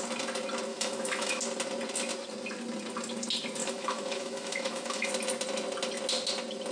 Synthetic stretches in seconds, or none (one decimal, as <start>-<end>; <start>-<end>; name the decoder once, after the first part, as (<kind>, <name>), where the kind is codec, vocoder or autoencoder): 0.7-1.4 (autoencoder, DAC-VAE); 3.6-5.1